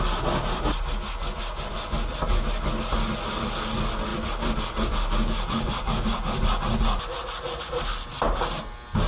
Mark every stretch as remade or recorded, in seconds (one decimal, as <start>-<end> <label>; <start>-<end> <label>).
0.0-9.1 recorded